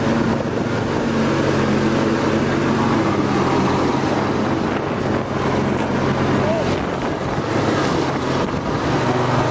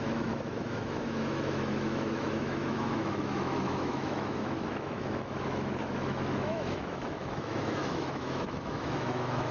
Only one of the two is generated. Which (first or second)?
second